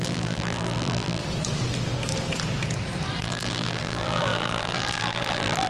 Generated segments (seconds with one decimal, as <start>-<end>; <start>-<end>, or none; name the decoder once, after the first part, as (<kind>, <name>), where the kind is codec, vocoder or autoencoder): 0.0-1.2 (vocoder, BigVGAN v2); 3.2-5.7